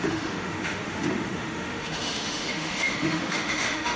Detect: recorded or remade remade